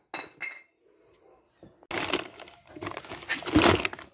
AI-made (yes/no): no